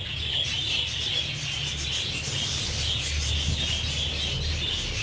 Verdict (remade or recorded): recorded